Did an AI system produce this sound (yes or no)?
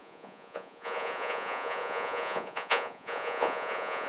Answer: yes